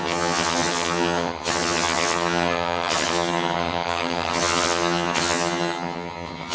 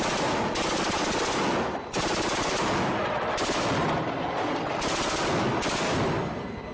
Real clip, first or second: second